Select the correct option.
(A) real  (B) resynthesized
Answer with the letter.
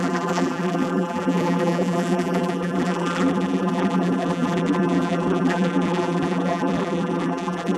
B